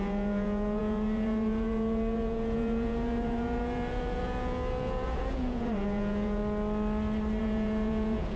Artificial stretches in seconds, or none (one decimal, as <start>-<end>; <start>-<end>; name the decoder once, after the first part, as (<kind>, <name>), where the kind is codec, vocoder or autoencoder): 0.0-6.4 (vocoder, Vocos); 7.4-8.4